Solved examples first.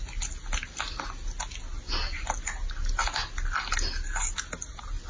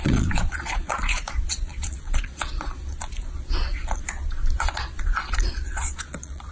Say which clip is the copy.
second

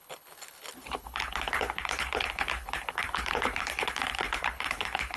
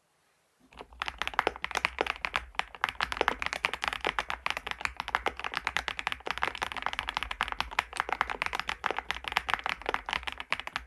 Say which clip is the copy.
first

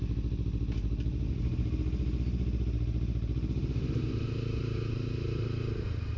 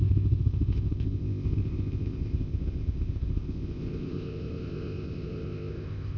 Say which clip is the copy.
second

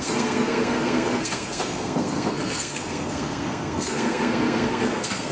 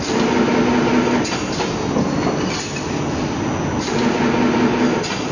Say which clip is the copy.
first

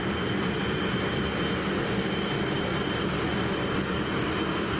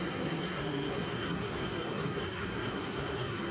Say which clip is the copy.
second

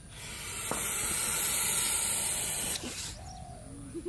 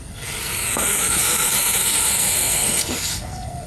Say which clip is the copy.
second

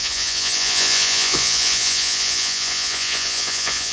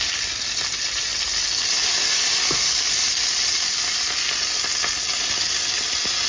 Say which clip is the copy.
first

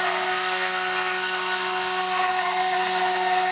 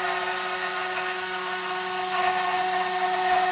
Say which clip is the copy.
first